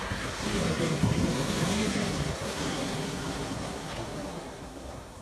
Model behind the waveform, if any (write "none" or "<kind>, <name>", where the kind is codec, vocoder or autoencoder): codec, SNAC